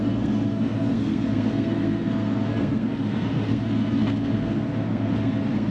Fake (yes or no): yes